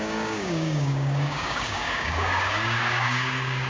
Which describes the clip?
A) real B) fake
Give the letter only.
B